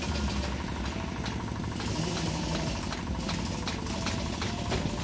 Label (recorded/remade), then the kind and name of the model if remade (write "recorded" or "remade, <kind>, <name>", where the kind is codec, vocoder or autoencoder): recorded